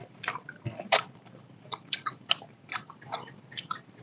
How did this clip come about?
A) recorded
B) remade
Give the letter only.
B